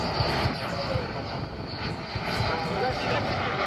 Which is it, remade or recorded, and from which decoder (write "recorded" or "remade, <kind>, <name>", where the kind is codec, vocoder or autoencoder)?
recorded